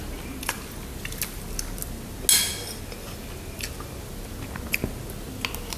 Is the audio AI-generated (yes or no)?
no